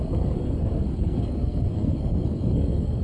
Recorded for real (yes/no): no